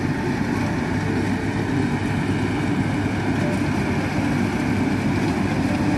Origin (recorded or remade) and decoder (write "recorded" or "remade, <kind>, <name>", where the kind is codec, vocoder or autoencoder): recorded